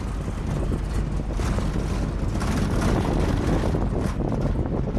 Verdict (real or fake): real